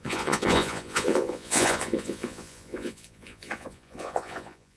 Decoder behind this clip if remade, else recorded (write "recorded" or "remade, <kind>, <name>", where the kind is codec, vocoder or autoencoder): remade, vocoder, Vocos